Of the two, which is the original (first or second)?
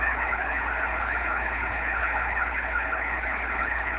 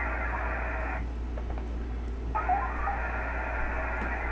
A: second